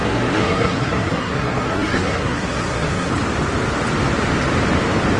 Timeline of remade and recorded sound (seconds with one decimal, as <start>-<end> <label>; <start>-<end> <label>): 0.0-3.1 remade; 3.1-5.2 recorded